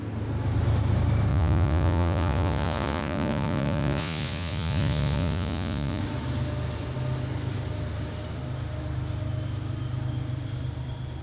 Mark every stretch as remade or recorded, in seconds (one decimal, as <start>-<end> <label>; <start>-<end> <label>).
0.0-1.3 recorded; 1.3-6.0 remade; 6.0-11.2 recorded